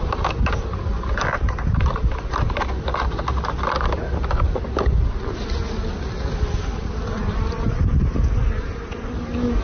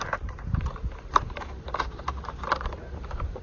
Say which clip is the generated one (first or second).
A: second